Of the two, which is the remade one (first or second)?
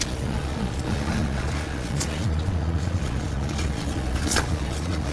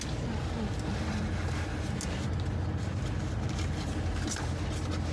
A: first